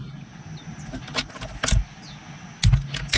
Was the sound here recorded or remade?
recorded